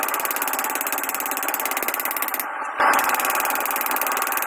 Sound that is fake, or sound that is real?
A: real